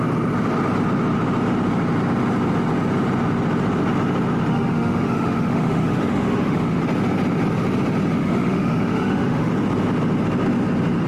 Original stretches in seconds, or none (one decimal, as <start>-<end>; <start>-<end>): 0.0-4.5; 6.8-8.2; 9.5-11.1